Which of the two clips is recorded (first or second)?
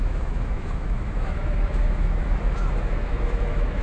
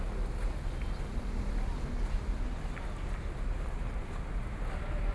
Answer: second